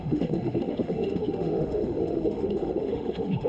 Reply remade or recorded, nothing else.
remade